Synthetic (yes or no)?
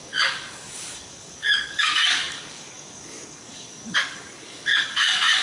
yes